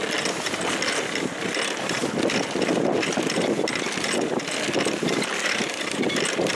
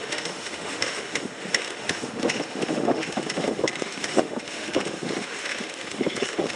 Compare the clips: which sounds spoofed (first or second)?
second